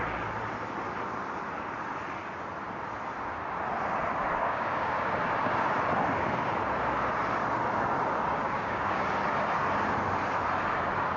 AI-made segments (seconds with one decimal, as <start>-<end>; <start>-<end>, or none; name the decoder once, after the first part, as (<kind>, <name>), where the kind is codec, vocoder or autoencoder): 4.4-5.1 (codec, DAC); 8.4-9.0